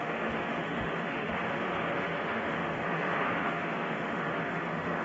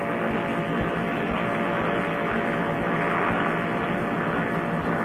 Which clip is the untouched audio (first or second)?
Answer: second